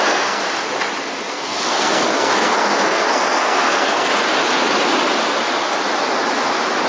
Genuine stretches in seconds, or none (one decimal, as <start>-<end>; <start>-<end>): 0.4-1.3; 4.1-6.9